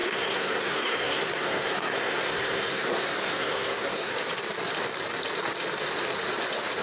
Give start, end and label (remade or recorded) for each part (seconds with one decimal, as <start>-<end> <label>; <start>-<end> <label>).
0.0-4.1 remade; 4.1-6.8 recorded